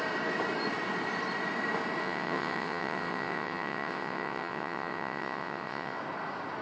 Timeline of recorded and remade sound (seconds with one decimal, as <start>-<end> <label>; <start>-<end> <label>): 0.0-2.0 recorded; 2.0-6.0 remade; 6.0-6.6 recorded